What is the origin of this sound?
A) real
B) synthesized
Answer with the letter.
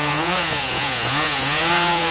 B